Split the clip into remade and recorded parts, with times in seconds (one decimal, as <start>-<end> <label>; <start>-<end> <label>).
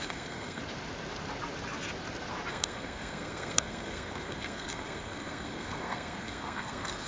0.0-0.6 remade; 0.6-2.5 recorded; 2.5-7.1 remade